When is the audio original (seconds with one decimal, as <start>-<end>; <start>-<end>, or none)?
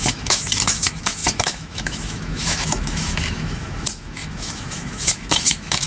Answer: none